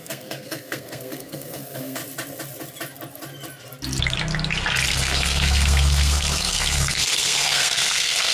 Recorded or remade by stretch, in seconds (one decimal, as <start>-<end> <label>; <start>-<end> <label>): 0.0-2.0 remade; 2.0-4.9 recorded; 4.9-8.3 remade